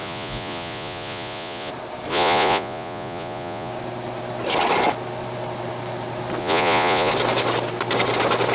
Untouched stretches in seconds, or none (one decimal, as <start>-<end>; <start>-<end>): 1.7-2.1; 3.7-6.4; 7.1-8.5